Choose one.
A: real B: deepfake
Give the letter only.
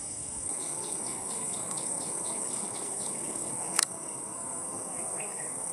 B